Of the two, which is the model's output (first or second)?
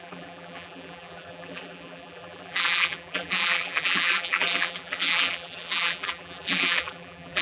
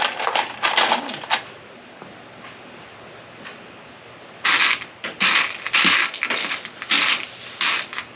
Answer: first